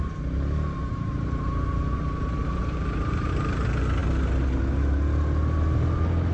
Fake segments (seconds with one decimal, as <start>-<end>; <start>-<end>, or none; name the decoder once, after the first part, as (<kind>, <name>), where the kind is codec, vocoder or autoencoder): 0.8-3.3 (vocoder, BigVGAN v2)